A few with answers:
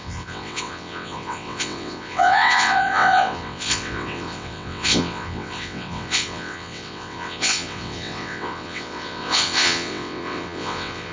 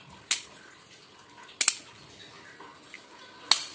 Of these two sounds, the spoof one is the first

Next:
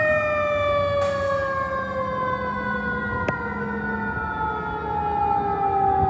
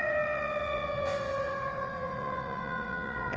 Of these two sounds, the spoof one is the second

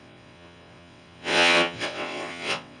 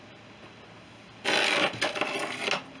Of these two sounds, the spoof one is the first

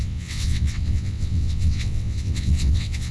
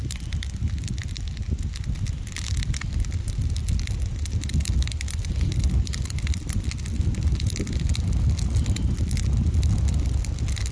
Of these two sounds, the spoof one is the first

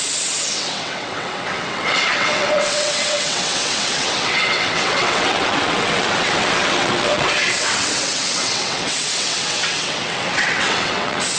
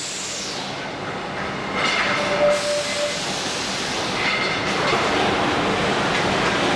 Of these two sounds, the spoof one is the first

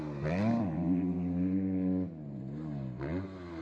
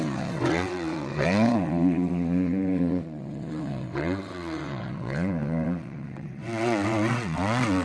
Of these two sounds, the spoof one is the second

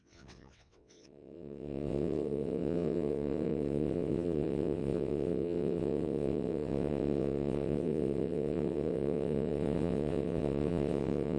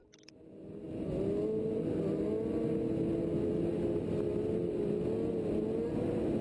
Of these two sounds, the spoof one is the first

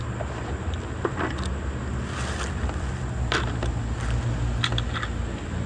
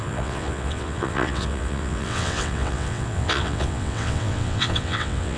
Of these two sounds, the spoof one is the second